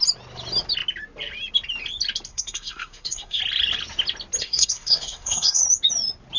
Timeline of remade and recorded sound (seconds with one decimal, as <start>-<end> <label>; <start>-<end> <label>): 0.0-2.3 recorded; 2.3-3.4 remade; 3.4-4.4 recorded; 4.4-5.6 remade; 5.6-6.4 recorded